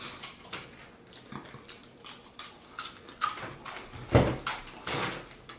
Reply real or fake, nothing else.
real